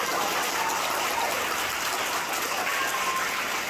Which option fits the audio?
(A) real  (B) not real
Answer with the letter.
A